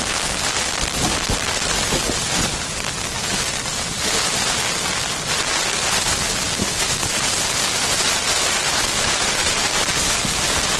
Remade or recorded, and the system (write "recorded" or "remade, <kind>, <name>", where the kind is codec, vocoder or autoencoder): recorded